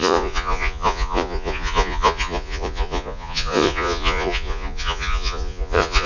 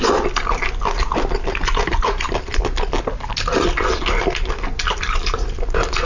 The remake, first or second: first